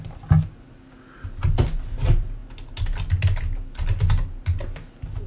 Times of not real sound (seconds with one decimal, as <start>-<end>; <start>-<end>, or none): none